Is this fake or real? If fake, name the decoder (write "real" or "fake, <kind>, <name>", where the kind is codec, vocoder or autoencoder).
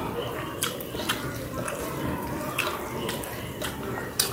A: fake, vocoder, BigVGAN v2